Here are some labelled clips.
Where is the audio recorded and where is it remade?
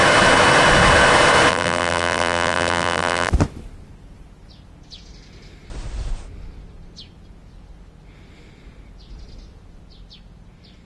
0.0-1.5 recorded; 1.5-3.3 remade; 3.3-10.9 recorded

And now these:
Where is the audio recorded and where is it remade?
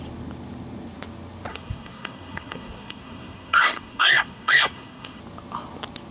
0.0-1.5 recorded; 1.5-5.2 remade; 5.2-6.1 recorded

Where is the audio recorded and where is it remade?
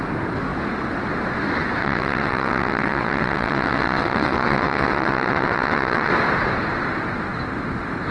0.0-1.8 recorded; 1.8-6.1 remade; 6.1-8.1 recorded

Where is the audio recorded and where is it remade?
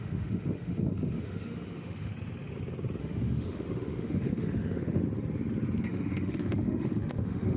0.0-2.1 remade; 2.1-3.0 recorded; 3.0-5.0 remade; 5.0-5.9 recorded; 5.9-7.6 remade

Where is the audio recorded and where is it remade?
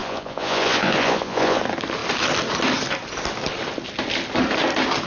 0.0-1.6 remade; 1.6-5.1 recorded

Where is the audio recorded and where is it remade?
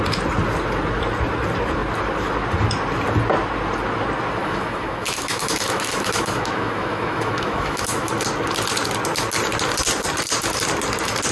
0.0-4.4 recorded; 4.4-8.1 remade; 8.1-11.3 recorded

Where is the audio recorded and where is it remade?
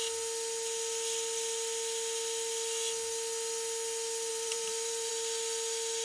0.0-4.3 recorded; 4.3-5.1 remade; 5.1-6.0 recorded